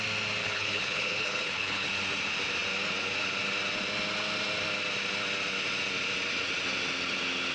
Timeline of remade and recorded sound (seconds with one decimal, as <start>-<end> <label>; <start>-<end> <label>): 0.0-0.4 recorded; 0.4-1.9 remade; 1.9-7.5 recorded